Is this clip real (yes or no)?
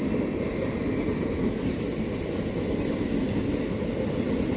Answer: yes